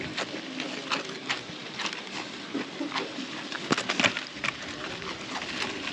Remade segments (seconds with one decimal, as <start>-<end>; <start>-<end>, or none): none